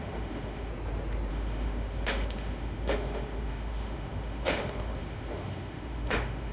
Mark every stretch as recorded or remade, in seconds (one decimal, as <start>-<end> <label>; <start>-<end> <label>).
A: 0.0-0.7 remade; 0.7-1.3 recorded; 1.3-6.5 remade